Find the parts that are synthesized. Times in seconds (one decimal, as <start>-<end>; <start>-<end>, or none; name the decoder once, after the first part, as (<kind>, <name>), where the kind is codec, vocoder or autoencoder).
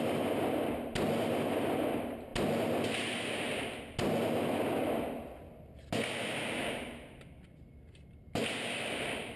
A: none